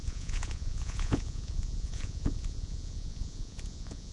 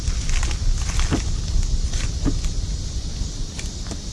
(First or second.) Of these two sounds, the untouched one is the second